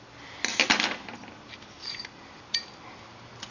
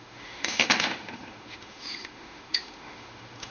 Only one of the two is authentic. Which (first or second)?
first